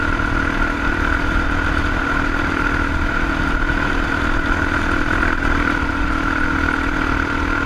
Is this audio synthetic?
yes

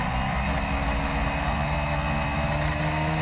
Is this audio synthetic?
no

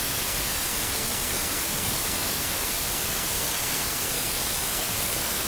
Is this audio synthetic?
yes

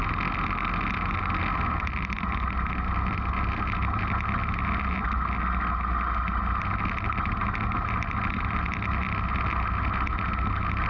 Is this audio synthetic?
no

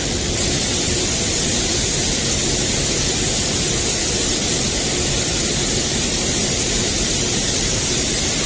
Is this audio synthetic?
yes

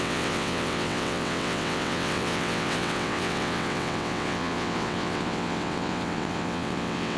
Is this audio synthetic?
yes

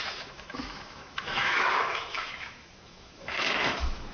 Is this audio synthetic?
yes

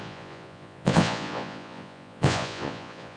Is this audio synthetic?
yes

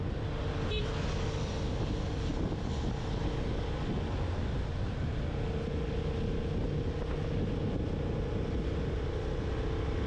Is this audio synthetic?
no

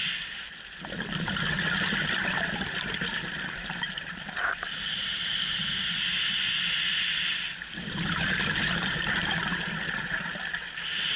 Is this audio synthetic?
no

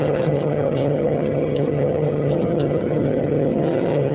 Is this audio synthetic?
yes